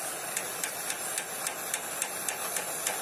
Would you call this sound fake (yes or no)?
no